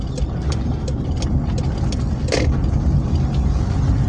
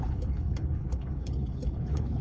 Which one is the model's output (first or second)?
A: second